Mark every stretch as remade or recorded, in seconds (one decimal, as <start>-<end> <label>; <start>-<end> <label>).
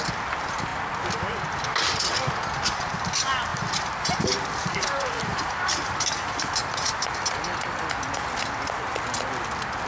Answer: 0.0-3.5 recorded; 3.5-5.7 remade; 5.7-6.6 recorded; 6.6-7.2 remade; 7.2-9.9 recorded